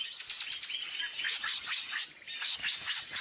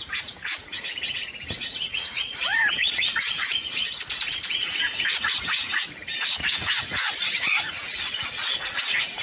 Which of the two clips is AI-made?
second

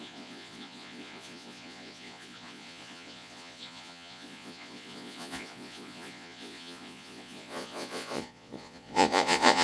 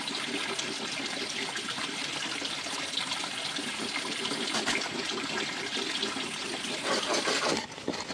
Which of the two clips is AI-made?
first